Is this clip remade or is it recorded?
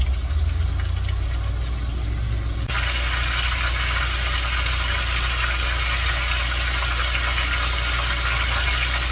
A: recorded